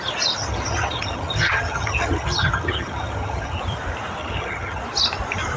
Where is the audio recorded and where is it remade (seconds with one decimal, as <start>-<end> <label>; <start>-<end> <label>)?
0.0-0.4 recorded; 0.4-3.6 remade; 3.6-4.2 recorded; 4.2-4.8 remade; 4.8-5.6 recorded